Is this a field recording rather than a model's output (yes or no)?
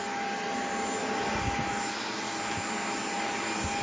yes